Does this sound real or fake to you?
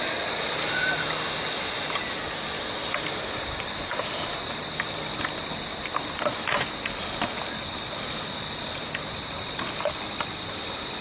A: real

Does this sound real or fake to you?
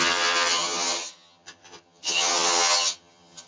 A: fake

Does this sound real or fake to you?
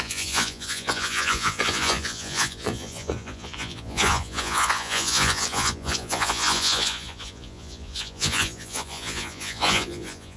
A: fake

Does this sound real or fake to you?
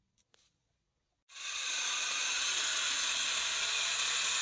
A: fake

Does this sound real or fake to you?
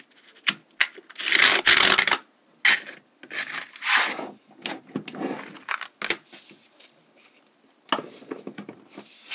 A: real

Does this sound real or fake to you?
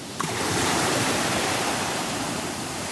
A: fake